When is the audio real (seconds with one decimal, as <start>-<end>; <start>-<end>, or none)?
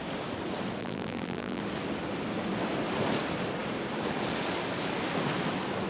0.0-0.8; 1.6-5.9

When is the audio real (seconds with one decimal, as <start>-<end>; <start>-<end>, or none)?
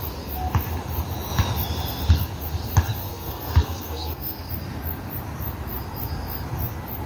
0.0-3.0; 4.5-7.1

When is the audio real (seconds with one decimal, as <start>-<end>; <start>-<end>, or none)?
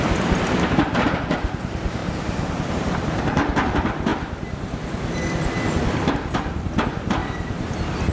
4.1-6.1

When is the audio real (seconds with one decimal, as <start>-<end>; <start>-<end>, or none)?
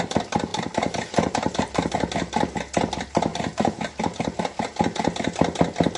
0.0-0.5; 1.9-3.3; 4.0-6.0